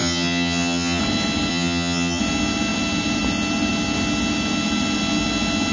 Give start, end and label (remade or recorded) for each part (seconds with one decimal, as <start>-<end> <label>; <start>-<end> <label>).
0.0-1.0 remade; 1.0-1.5 recorded; 1.5-2.2 remade; 2.2-5.7 recorded